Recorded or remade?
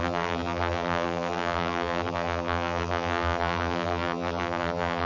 remade